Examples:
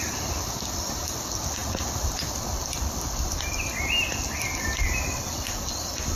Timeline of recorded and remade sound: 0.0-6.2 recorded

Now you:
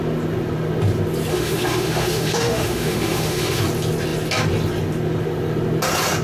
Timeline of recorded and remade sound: 0.0-1.3 recorded; 1.3-3.6 remade; 3.6-6.2 recorded

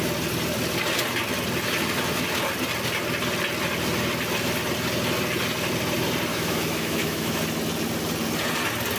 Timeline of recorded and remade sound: 0.0-6.3 recorded; 6.3-7.4 remade; 7.4-9.0 recorded

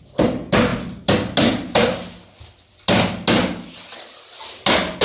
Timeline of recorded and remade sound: 0.0-5.0 recorded

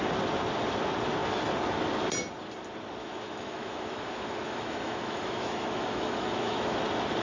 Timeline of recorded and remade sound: 0.0-3.0 recorded; 3.0-6.8 remade; 6.8-7.2 recorded

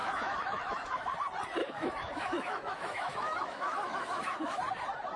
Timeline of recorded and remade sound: 0.0-1.1 remade; 1.1-1.6 recorded; 1.6-4.6 remade; 4.6-5.2 recorded